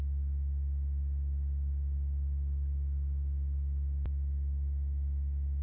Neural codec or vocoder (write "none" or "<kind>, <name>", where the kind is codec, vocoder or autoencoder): none